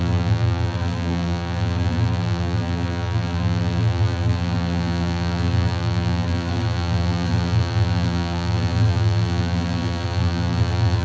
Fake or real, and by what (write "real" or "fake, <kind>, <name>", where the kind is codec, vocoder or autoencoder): fake, vocoder, BigVGAN v2